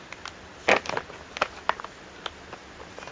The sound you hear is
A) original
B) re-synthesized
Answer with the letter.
A